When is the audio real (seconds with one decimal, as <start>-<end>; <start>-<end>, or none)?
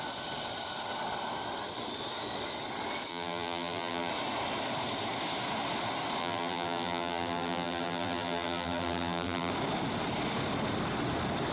0.0-3.1; 4.1-6.2; 9.5-11.5